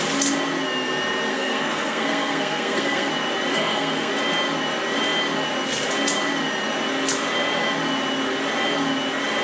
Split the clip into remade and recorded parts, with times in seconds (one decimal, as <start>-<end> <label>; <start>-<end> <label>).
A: 0.0-1.3 recorded; 1.3-3.1 remade; 3.1-3.5 recorded; 3.5-4.1 remade; 4.1-9.4 recorded